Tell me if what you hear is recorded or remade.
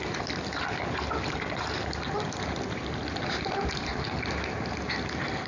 recorded